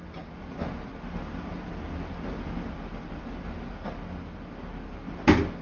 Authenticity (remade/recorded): recorded